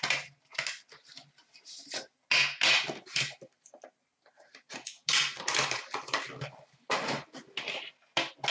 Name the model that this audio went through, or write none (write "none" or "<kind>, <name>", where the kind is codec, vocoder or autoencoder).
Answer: none